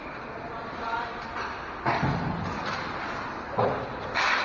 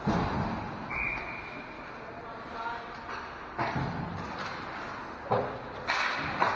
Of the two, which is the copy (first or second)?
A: first